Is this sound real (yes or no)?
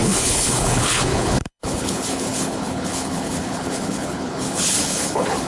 no